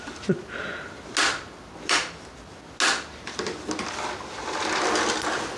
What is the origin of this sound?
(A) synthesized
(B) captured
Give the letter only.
B